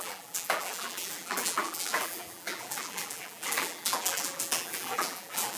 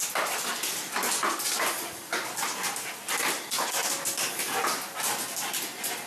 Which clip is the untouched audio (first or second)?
second